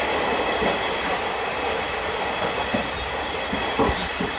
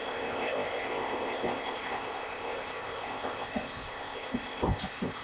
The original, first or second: first